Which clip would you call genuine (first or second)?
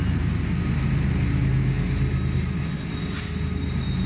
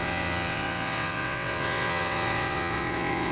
first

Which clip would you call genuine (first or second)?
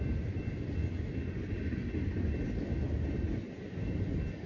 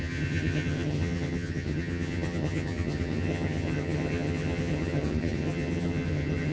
first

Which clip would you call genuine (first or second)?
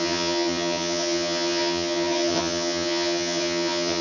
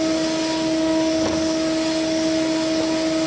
second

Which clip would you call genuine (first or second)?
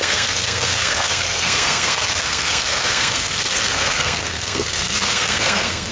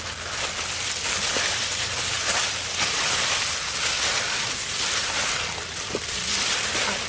second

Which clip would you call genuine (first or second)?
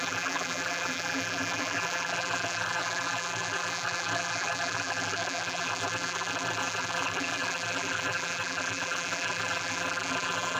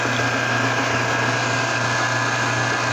second